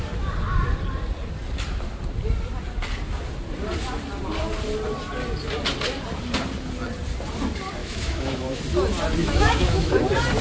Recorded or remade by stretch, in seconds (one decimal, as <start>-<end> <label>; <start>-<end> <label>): 0.0-7.8 recorded; 7.8-8.6 remade; 8.6-9.2 recorded; 9.2-9.9 remade; 9.9-10.4 recorded